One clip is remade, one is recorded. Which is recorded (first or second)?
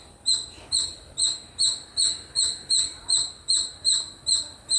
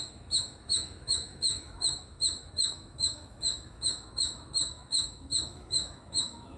first